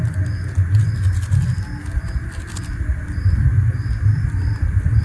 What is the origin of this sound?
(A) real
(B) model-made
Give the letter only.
A